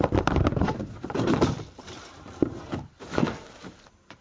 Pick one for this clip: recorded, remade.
recorded